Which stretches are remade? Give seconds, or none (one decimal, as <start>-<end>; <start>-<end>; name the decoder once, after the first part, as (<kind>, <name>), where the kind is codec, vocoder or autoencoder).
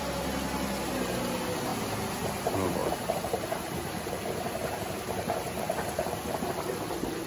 2.8-6.2 (vocoder, BigVGAN v2)